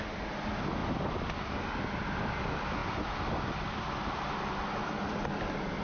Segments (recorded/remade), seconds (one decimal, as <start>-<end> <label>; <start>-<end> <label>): 0.0-5.8 recorded